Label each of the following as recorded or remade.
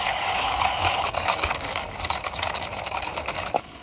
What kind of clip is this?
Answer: remade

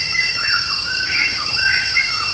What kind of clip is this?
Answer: remade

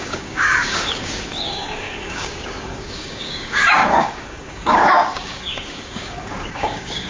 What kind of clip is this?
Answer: remade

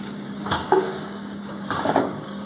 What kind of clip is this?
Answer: remade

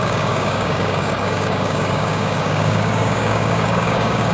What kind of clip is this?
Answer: remade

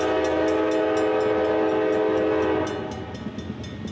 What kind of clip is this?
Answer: recorded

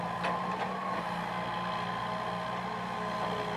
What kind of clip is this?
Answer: recorded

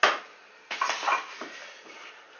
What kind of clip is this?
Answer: recorded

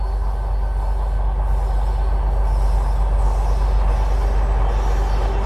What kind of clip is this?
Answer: recorded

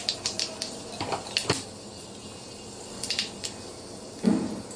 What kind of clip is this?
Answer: recorded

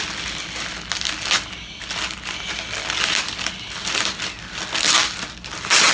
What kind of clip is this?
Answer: recorded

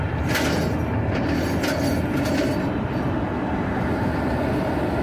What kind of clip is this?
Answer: recorded